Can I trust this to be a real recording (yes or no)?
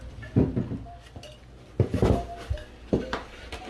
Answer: yes